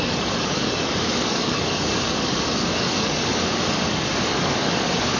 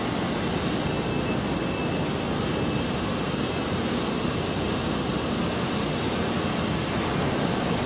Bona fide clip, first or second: second